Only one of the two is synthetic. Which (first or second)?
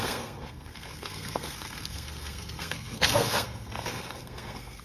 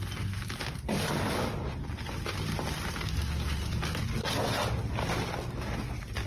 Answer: first